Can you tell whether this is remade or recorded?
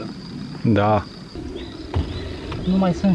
recorded